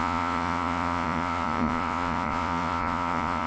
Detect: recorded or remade remade